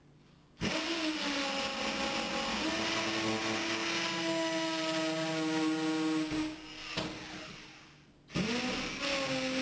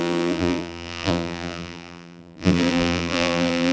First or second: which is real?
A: first